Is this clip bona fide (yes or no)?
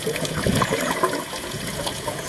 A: no